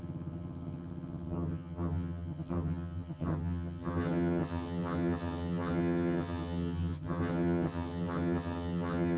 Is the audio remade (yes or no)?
yes